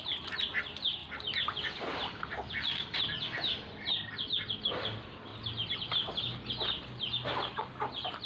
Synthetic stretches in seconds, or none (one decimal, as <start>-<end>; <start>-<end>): none